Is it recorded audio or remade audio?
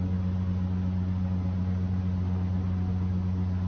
recorded